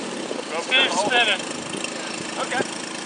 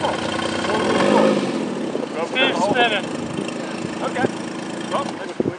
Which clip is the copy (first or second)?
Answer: first